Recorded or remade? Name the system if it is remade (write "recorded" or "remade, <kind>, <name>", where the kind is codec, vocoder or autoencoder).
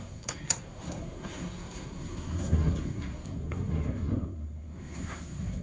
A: remade, codec, SNAC